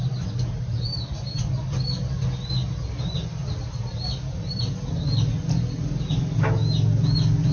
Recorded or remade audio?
recorded